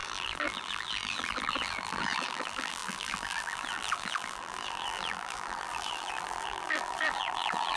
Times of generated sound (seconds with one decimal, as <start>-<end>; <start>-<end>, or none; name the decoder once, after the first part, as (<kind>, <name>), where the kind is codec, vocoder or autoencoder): 0.0-7.8 (vocoder, BigVGAN v2)